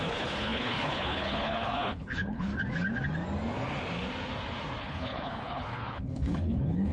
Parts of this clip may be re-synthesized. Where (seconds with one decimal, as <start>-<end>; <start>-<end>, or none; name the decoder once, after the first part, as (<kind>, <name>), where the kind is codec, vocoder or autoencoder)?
0.0-2.5 (codec, HILCodec); 4.8-6.9